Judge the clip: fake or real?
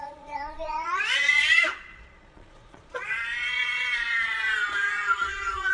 fake